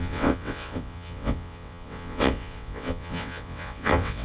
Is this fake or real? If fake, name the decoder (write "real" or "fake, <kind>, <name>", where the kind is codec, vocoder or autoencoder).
fake, vocoder, WaveNeXt